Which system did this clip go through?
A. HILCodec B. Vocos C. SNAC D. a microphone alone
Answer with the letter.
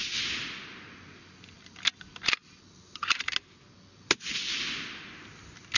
D